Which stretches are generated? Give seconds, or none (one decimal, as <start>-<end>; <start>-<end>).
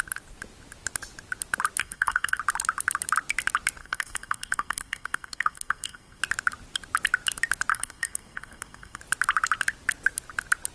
1.8-2.4; 3.8-6.2; 7.7-9.0